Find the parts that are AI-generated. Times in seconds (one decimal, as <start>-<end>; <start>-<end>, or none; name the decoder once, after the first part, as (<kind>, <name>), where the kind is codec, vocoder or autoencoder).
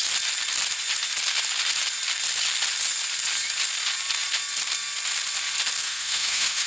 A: 5.8-6.7 (autoencoder, DAC-VAE)